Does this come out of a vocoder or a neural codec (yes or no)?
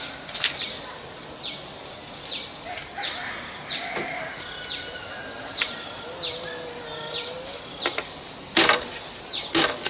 no